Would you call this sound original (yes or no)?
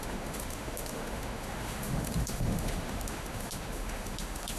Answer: no